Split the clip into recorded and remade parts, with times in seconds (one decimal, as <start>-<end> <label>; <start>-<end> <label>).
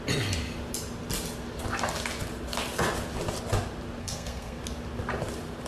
0.0-4.0 recorded; 4.0-4.6 remade; 4.6-5.7 recorded